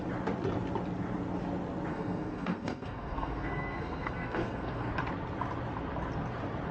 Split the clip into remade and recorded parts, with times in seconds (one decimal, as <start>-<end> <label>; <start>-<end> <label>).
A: 0.0-1.9 recorded; 1.9-4.9 remade; 4.9-6.7 recorded